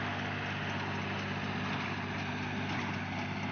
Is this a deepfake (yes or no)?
no